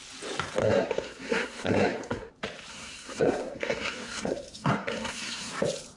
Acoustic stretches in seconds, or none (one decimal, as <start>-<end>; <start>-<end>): 0.0-0.6; 2.3-2.7; 5.5-6.0